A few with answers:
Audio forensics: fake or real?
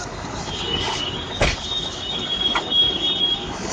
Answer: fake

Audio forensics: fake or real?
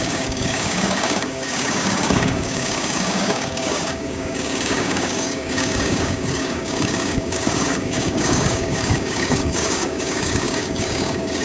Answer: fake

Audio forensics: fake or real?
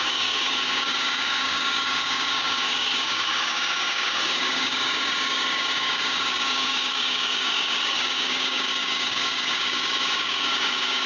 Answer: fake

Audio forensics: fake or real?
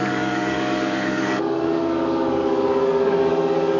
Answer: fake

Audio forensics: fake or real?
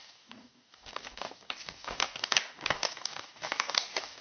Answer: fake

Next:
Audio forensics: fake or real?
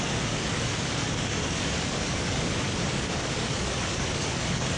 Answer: fake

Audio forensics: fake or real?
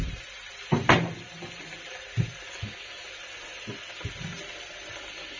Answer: real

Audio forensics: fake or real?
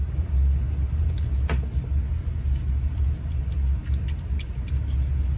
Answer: real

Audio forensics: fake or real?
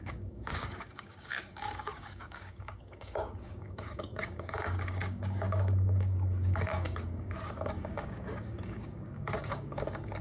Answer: fake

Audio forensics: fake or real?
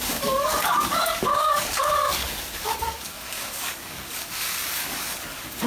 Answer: fake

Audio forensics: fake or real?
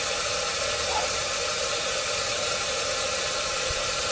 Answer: real